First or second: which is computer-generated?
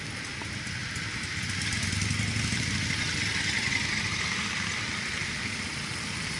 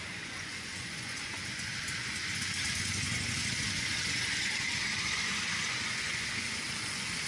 second